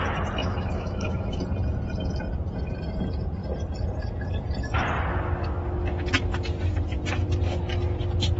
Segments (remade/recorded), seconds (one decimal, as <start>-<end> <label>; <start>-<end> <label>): 0.0-0.4 recorded; 0.4-1.4 remade; 1.4-5.1 recorded; 5.1-6.1 remade; 6.1-8.4 recorded